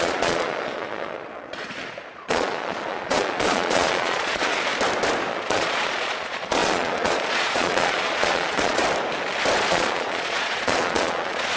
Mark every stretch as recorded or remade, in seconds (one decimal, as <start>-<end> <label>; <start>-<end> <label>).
0.0-4.7 remade; 4.7-5.3 recorded; 5.3-8.8 remade; 8.8-9.7 recorded; 9.7-11.6 remade

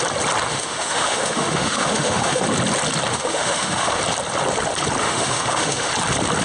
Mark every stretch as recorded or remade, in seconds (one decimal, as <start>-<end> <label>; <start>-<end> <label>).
0.0-0.5 recorded; 0.5-2.4 remade; 2.4-3.1 recorded; 3.1-4.0 remade; 4.0-5.0 recorded; 5.0-5.9 remade; 5.9-6.4 recorded